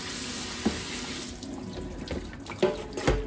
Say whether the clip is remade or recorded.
recorded